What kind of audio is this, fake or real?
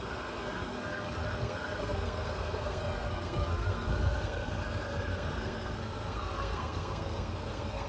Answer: fake